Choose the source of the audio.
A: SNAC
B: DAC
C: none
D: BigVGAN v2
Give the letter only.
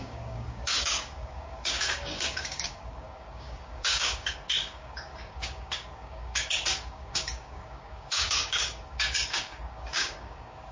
B